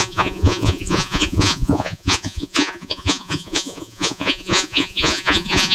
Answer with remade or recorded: remade